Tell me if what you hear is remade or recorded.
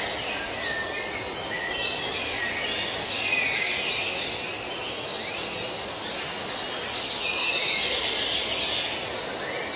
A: recorded